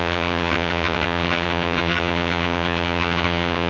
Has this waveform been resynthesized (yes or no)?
yes